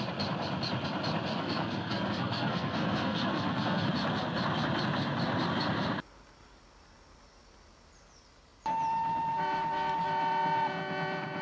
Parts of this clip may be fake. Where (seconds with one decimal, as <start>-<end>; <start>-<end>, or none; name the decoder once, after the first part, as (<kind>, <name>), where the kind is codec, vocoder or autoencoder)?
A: 1.3-3.9 (codec, SNAC)